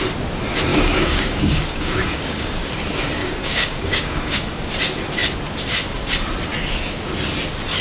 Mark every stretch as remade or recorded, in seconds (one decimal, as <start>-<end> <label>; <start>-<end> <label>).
0.0-0.7 recorded; 0.7-2.6 remade; 2.6-3.2 recorded; 3.2-4.7 remade; 4.7-7.8 recorded